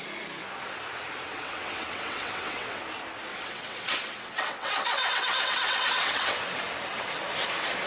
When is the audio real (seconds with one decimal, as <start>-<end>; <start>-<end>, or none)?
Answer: 0.0-1.3; 2.8-3.3; 6.4-7.9